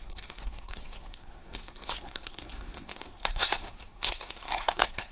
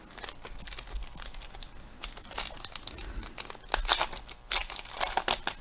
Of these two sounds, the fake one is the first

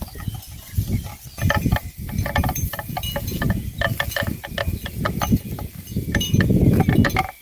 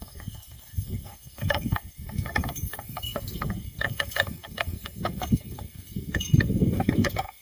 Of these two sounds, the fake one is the second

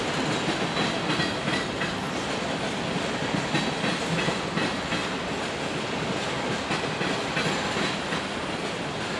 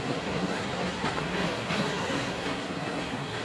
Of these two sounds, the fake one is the second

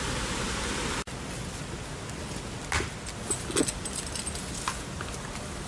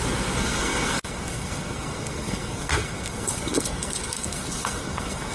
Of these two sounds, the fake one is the second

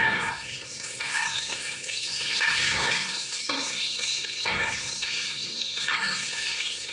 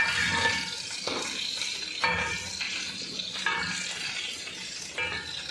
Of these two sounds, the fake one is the first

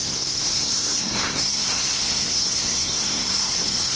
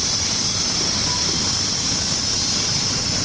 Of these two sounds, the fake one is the first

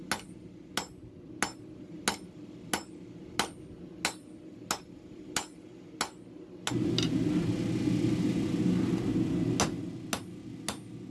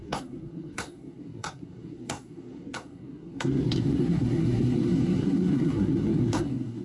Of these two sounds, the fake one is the second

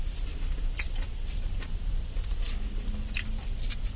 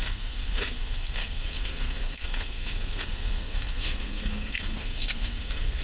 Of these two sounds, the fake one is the second